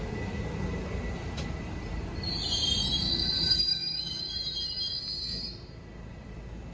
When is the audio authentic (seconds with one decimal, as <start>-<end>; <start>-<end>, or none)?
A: 0.0-3.7; 4.2-6.7